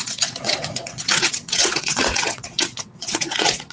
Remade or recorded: remade